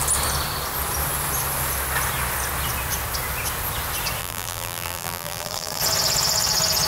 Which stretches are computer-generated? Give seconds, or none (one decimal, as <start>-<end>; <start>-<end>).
4.2-5.8